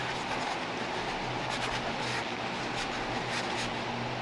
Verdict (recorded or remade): recorded